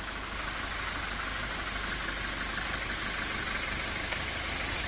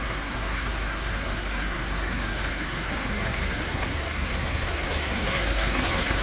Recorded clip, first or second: first